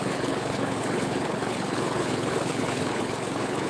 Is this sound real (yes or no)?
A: no